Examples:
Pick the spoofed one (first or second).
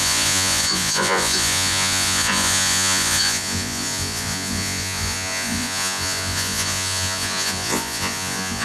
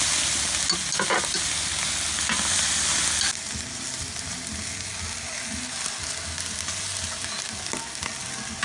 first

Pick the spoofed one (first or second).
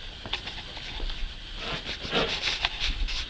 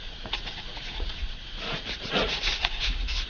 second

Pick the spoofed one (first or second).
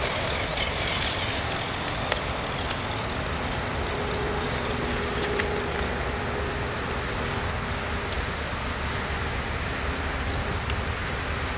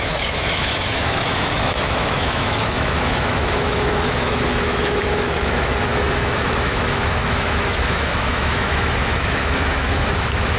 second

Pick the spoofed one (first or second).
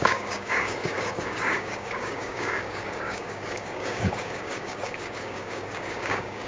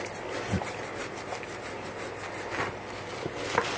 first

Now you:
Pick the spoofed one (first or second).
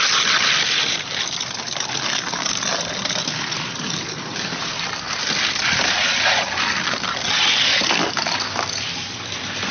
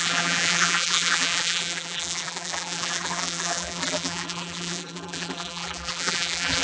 second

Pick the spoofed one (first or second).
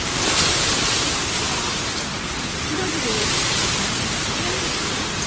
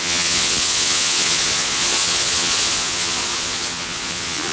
second